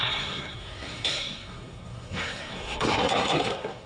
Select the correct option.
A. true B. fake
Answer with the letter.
B